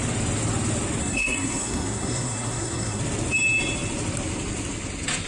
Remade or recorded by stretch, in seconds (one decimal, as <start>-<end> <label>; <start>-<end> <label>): 0.0-1.0 recorded; 1.0-3.0 remade; 3.0-5.3 recorded